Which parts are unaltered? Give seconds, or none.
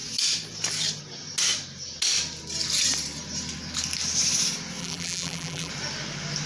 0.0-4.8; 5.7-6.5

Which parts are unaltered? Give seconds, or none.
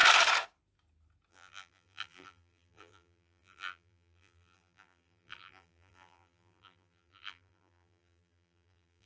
0.0-1.3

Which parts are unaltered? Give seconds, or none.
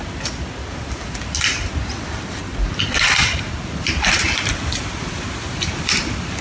0.0-6.4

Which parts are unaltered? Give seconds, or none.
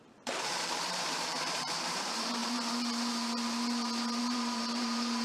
2.4-4.2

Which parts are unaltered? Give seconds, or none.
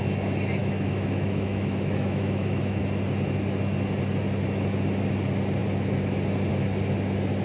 0.0-0.6; 2.8-7.4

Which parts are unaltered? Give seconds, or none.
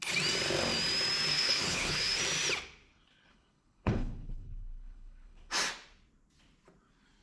0.0-1.3; 2.2-2.9; 5.5-7.2